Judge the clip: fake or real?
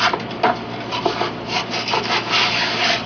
real